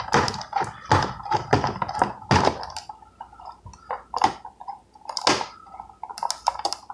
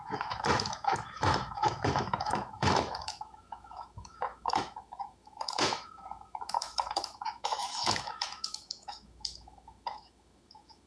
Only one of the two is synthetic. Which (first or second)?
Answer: second